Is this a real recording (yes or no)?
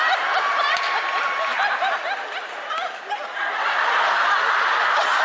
yes